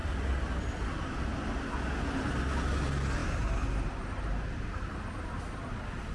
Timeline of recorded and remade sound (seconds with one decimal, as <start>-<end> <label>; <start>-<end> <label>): 0.0-6.1 recorded